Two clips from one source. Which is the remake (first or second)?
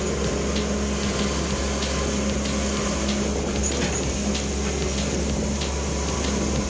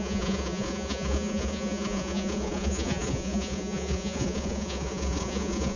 second